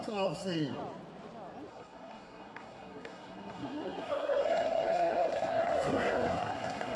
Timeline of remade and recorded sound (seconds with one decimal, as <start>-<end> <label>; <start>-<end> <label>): 0.0-0.8 remade; 0.8-1.7 recorded; 1.7-7.0 remade